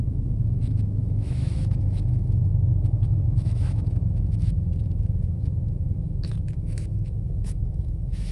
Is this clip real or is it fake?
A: fake